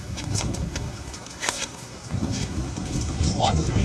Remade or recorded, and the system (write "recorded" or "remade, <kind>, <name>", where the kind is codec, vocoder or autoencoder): remade, codec, SNAC